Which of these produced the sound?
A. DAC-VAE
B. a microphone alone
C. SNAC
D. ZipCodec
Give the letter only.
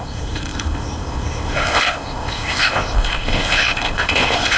D